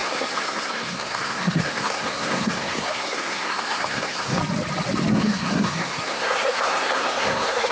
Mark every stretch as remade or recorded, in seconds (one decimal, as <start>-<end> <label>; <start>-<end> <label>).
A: 0.0-4.4 remade; 4.4-5.1 recorded; 5.1-7.7 remade